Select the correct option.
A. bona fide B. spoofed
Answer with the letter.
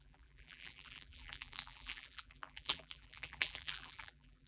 B